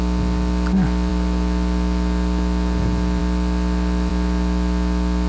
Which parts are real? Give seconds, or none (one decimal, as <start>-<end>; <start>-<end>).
0.0-5.3